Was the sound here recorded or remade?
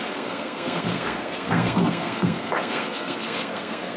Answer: remade